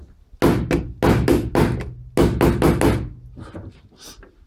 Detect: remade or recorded recorded